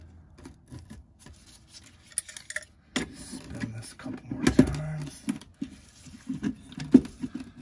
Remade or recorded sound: recorded